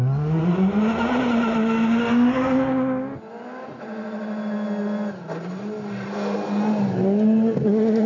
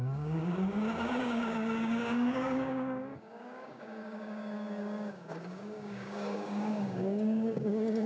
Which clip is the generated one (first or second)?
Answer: second